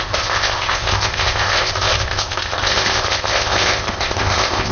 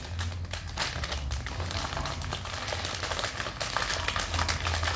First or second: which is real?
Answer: second